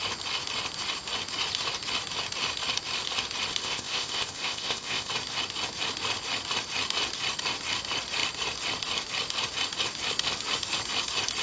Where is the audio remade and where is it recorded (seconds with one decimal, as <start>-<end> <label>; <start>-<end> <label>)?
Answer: 0.0-3.6 recorded; 3.6-5.1 remade; 5.1-11.4 recorded